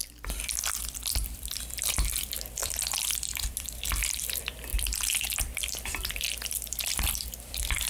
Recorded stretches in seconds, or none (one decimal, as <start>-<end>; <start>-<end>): 0.0-0.7; 2.6-3.3